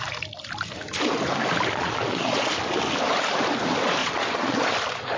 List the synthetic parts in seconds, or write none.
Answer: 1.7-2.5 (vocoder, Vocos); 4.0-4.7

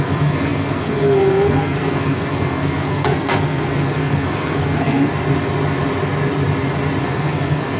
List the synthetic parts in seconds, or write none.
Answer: 0.0-5.1 (codec, SNAC); 7.0-7.8